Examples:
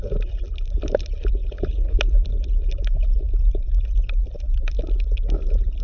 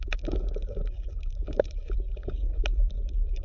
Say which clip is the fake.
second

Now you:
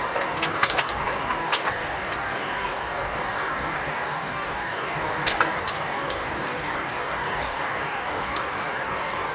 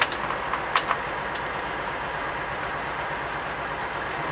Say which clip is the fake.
first